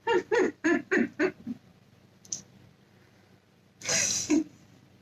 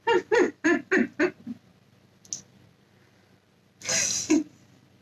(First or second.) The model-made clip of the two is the first